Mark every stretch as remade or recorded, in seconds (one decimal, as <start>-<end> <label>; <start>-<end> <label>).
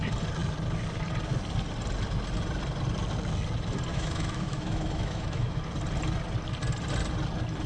0.0-3.9 recorded; 3.9-5.6 remade; 5.6-7.7 recorded